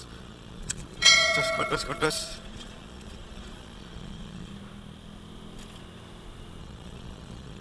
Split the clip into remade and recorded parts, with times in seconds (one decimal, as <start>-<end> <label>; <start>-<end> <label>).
0.0-4.5 remade; 4.5-6.6 recorded; 6.6-7.6 remade